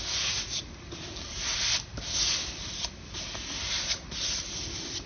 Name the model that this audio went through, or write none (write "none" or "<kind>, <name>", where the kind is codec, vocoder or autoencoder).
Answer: none